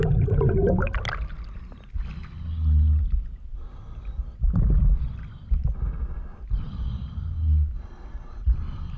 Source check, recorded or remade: recorded